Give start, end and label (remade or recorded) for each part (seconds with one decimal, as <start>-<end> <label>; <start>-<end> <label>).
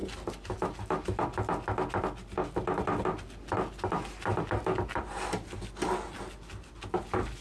0.0-7.4 recorded